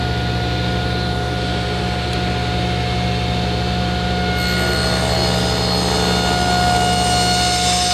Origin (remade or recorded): recorded